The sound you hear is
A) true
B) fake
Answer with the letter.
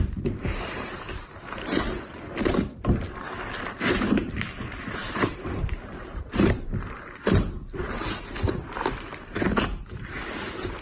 B